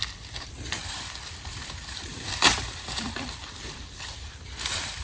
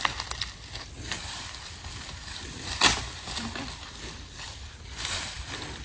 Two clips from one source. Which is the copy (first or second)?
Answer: first